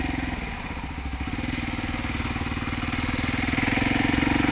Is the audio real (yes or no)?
yes